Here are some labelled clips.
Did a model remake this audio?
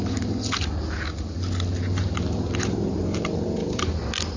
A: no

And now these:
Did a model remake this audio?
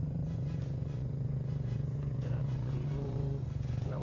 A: yes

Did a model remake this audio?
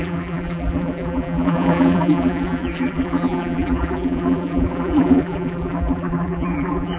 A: yes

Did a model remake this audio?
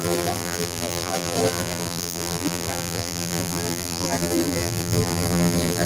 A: yes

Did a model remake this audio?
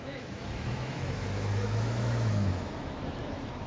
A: yes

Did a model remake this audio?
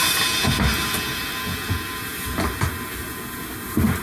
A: no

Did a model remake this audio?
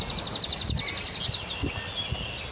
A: no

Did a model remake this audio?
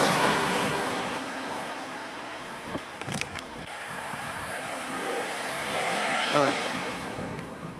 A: yes